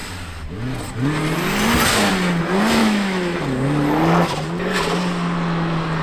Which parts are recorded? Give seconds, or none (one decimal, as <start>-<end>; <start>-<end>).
0.0-2.8; 3.4-6.0